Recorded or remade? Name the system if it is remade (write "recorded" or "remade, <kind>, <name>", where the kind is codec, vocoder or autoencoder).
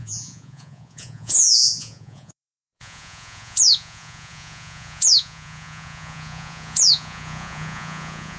remade, vocoder, Vocos